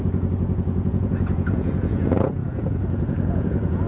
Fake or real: fake